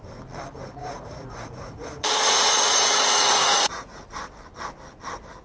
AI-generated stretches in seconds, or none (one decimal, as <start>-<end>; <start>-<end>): 0.8-4.0